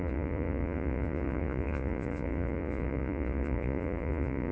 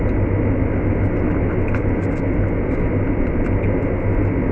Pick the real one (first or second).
second